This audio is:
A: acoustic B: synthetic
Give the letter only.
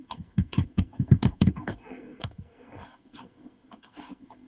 B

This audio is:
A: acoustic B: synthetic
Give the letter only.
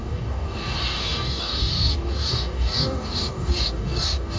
B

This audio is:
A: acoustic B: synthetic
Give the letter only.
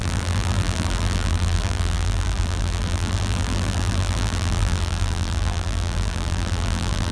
B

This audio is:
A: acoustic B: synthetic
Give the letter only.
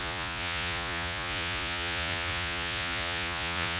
B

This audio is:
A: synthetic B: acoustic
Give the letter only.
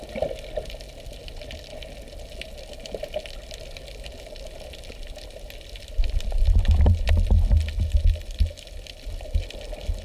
B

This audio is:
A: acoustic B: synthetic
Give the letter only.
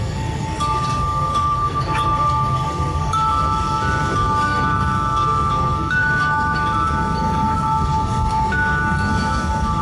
B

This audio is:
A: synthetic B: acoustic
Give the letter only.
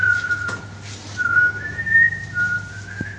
B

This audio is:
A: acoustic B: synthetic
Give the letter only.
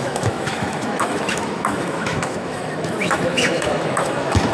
B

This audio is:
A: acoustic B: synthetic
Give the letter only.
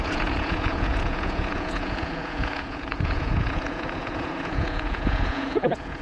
B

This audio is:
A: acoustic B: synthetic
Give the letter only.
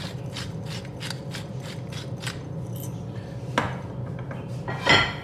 A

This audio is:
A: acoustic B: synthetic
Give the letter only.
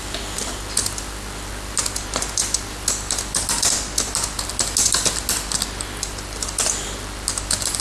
A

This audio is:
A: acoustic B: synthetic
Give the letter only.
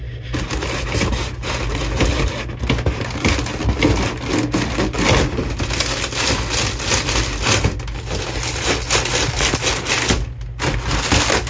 A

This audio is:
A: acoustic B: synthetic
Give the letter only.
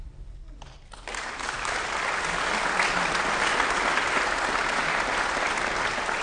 A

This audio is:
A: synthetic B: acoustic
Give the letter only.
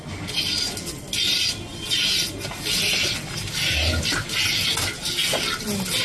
B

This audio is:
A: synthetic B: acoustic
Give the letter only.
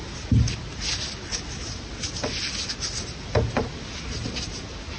B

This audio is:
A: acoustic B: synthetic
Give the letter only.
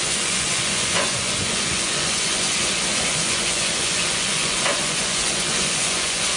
B